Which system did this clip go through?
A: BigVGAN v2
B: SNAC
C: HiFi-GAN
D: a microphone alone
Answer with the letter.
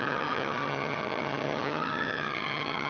C